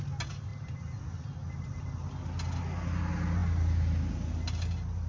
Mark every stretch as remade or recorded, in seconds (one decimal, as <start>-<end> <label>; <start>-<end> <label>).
0.0-5.1 recorded